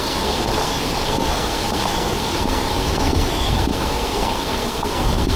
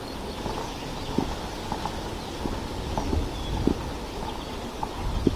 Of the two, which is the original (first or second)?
second